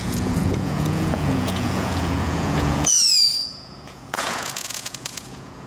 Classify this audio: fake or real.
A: fake